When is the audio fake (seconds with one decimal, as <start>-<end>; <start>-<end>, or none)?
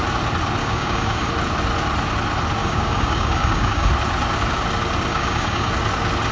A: 0.6-1.3; 2.6-3.9; 5.1-5.7